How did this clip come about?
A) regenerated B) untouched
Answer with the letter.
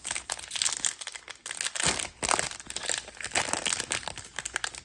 B